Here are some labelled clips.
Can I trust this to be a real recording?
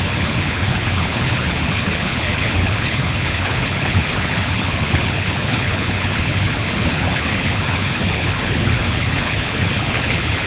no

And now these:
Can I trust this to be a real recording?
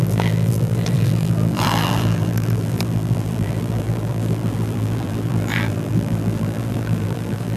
no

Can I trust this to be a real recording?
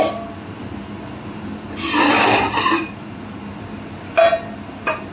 yes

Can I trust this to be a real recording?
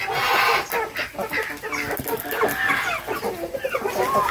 yes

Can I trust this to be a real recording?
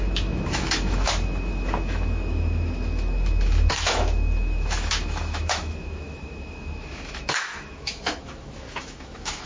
no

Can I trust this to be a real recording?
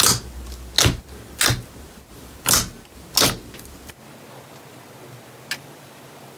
yes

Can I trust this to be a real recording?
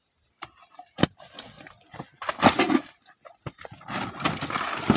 yes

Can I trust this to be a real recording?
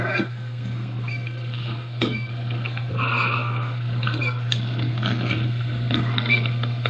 no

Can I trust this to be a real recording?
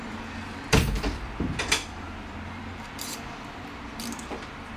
no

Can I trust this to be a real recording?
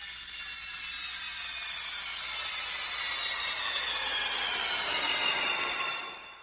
yes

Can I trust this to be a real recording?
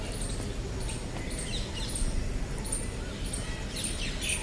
yes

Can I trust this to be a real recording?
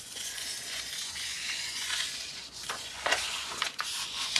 no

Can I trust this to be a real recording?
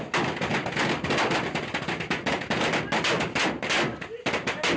yes